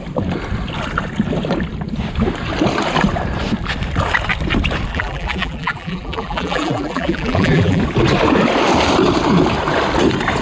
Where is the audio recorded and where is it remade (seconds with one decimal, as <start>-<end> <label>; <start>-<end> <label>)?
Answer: 0.0-4.9 recorded; 4.9-7.8 remade; 7.8-10.4 recorded